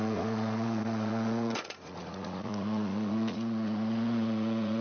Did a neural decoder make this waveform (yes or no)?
yes